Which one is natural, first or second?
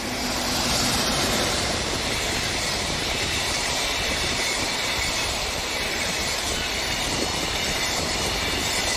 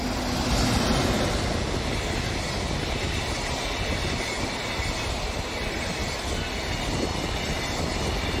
second